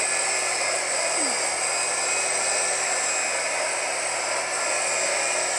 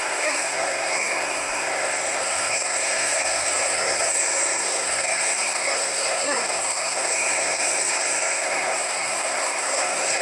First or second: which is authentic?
first